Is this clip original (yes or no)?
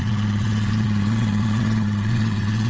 no